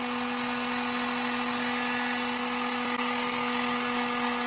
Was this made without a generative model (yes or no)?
yes